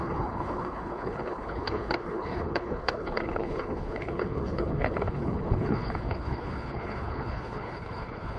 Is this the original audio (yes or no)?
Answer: no